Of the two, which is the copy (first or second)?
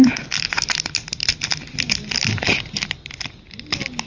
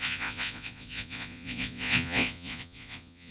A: second